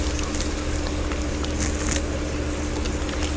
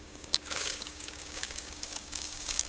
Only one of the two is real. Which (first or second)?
first